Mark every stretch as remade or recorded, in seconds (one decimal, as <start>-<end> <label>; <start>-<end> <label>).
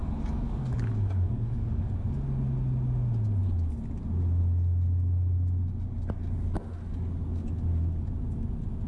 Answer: 0.0-1.9 remade; 1.9-8.9 recorded